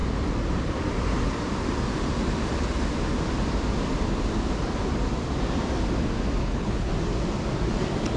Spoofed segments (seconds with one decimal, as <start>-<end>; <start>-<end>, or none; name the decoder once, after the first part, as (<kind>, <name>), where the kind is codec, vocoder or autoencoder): 6.4-6.9 (codec, HILCodec)